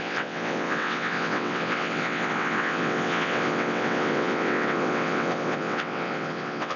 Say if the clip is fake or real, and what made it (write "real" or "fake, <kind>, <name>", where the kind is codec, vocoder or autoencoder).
fake, vocoder, WaveNeXt